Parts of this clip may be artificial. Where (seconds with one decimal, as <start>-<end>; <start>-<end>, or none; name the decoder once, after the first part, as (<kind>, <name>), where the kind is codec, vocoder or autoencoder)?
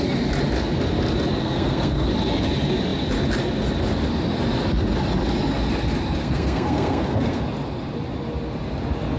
1.4-2.1 (codec, SNAC); 6.2-7.4